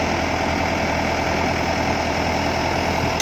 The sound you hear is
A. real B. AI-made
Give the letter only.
A